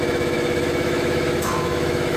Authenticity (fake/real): fake